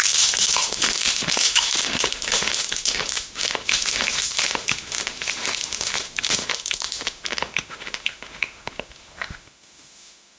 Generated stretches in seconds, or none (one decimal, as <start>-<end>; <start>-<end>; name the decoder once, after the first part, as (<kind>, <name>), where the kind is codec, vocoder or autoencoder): 0.0-10.4 (autoencoder, DAC-VAE)